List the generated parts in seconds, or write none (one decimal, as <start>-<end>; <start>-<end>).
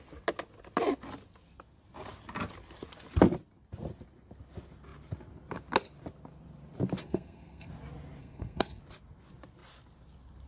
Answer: 7.0-7.7; 8.2-8.8